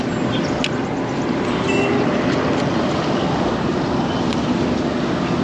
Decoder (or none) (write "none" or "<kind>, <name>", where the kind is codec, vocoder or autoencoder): none